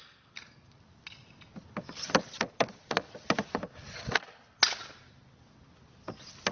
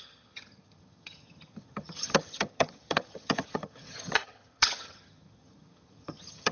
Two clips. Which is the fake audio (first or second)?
second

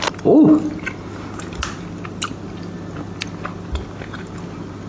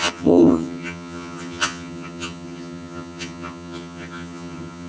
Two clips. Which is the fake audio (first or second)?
second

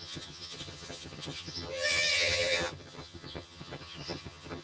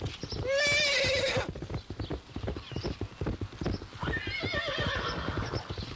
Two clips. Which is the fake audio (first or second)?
first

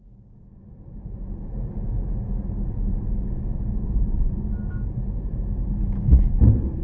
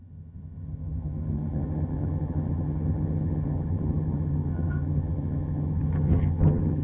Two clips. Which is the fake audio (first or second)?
second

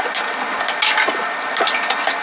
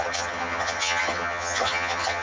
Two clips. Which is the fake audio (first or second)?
second